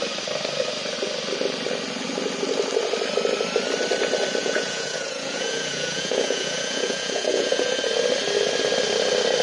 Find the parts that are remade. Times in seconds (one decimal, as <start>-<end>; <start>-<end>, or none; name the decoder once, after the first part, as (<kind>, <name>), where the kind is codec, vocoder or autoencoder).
4.4-7.8 (vocoder, Vocos)